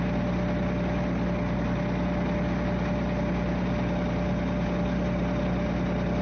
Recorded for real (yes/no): yes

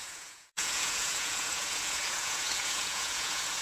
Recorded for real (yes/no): no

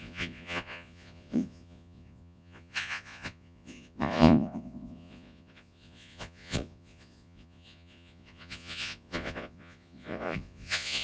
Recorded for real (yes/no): no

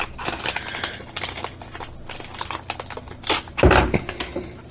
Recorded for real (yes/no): yes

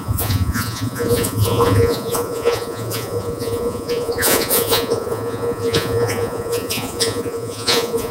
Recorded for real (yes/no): no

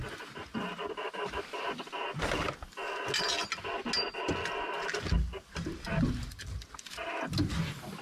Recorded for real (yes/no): yes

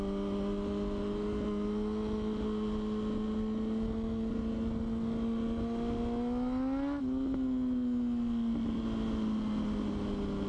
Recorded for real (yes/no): yes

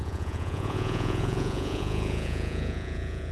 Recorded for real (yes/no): no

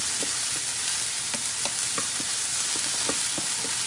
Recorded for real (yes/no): yes